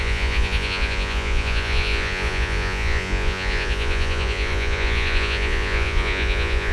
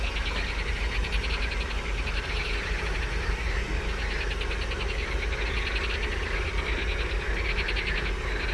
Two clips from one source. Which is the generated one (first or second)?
first